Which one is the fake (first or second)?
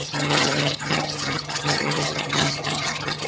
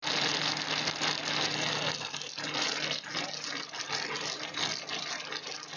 first